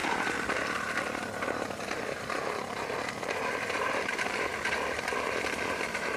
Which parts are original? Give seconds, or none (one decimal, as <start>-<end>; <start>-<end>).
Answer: 0.0-3.7; 4.5-6.2